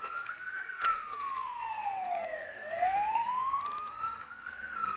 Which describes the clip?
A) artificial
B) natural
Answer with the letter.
A